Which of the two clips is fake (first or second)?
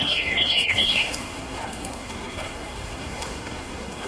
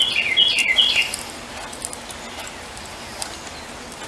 first